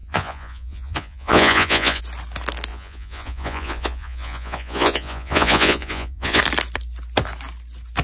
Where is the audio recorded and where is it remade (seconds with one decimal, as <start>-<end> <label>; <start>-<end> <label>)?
0.0-2.0 remade; 2.0-2.7 recorded; 2.7-6.4 remade; 6.4-8.0 recorded